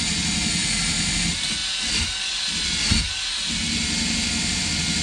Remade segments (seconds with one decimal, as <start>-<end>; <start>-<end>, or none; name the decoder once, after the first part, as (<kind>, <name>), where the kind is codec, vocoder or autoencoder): none